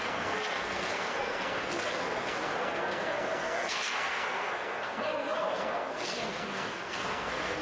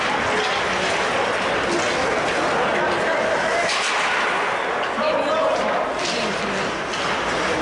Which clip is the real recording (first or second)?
second